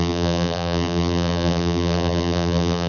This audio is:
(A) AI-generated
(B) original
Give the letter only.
A